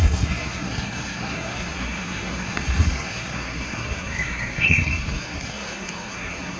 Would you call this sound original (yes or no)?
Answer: no